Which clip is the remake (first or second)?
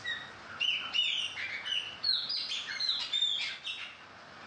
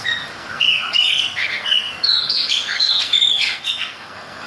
second